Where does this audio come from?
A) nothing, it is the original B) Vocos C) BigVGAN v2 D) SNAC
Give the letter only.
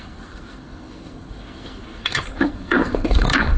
D